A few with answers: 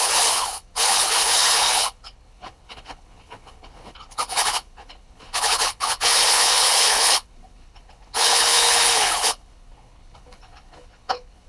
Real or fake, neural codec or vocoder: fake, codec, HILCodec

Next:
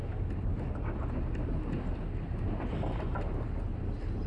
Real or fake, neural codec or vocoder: real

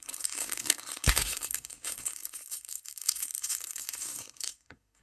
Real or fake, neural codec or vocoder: fake, codec, SNAC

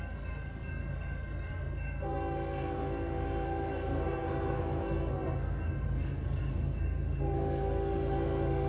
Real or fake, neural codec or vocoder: fake, codec, SNAC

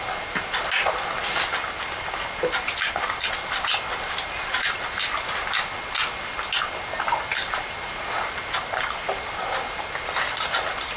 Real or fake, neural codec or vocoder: real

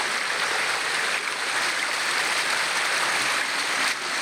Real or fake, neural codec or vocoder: real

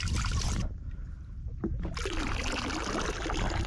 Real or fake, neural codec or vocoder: real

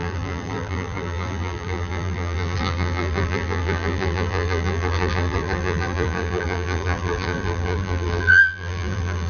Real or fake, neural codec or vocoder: fake, vocoder, BigVGAN v2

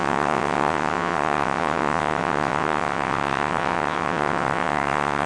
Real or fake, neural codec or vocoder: fake, vocoder, WaveNeXt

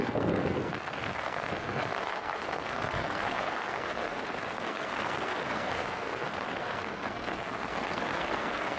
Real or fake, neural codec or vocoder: fake, codec, SNAC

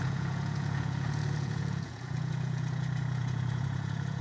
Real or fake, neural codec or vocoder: fake, vocoder, Vocos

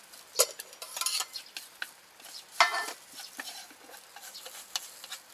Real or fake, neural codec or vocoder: real